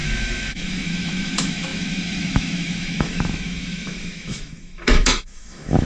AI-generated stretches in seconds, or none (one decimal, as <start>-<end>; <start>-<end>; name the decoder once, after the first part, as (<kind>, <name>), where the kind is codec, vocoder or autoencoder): 0.0-5.9 (autoencoder, DAC-VAE)

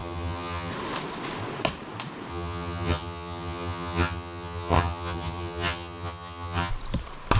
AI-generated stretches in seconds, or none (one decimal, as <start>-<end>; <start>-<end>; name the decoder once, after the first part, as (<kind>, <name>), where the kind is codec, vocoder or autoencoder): 0.0-0.7 (vocoder, HiFi-GAN); 2.3-6.7

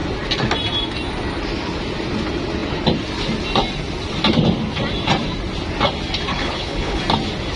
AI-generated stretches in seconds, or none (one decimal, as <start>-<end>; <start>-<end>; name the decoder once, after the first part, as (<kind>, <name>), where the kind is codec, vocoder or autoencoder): 6.3-7.0 (codec, HILCodec)

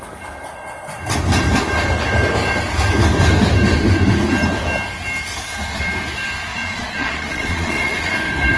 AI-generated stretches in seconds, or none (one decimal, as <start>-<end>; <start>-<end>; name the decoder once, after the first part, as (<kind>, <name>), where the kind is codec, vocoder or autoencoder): 6.5-8.1 (vocoder, Vocos)

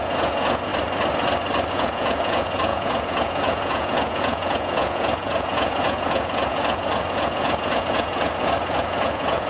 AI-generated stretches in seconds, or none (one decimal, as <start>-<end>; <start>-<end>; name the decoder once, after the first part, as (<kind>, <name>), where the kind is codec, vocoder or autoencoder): 0.0-0.7 (vocoder, Vocos); 1.7-9.5

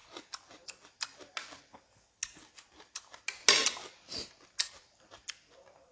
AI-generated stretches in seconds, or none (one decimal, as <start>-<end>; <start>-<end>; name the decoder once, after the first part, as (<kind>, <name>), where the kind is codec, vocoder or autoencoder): none

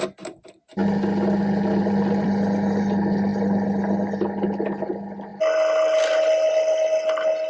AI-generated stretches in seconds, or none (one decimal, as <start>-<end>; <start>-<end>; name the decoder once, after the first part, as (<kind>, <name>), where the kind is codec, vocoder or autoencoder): none